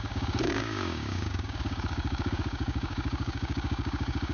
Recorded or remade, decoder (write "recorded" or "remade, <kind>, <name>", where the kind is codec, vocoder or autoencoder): remade, codec, DAC